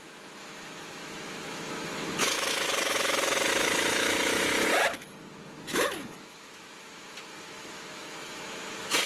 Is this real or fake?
fake